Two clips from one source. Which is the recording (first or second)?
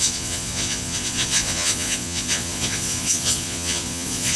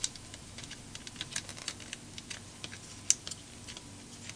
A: second